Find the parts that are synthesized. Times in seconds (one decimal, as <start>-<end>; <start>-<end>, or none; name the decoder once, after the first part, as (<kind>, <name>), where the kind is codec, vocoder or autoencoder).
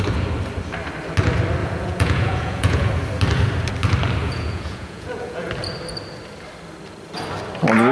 1.6-2.9 (vocoder, Vocos); 4.2-5.5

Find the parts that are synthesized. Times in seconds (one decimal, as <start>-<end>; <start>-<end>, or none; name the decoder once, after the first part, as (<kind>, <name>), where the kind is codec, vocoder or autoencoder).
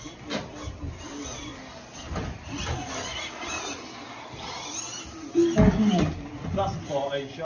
none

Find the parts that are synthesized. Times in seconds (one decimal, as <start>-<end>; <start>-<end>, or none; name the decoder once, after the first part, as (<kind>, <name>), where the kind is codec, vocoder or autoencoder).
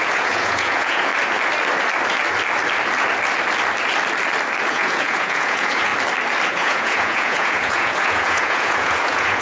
0.0-1.1 (vocoder, Vocos); 4.7-5.9; 6.5-9.4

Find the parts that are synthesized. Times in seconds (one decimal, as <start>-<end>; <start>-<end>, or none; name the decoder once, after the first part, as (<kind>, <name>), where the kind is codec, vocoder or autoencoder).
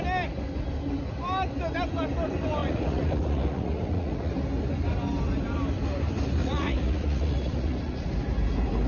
2.6-4.3 (vocoder, Vocos); 6.4-8.1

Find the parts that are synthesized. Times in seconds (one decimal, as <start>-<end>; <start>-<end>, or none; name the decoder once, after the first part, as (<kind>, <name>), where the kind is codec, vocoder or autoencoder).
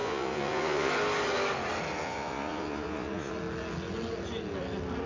0.0-0.9 (vocoder, Vocos); 2.0-3.3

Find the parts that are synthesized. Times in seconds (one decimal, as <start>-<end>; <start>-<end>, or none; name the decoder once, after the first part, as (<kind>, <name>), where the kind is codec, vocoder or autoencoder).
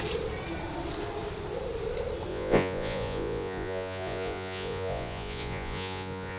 2.3-6.4 (vocoder, Vocos)